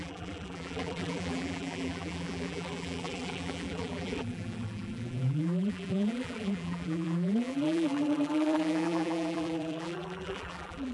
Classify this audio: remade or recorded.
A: remade